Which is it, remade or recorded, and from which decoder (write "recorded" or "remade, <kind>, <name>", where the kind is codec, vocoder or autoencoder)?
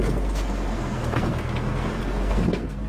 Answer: remade, codec, SNAC